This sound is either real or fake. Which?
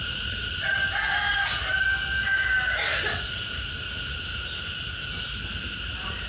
real